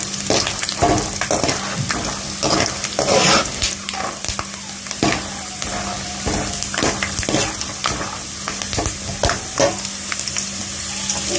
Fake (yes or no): no